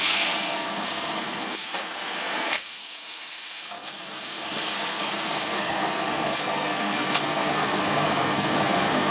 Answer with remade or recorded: remade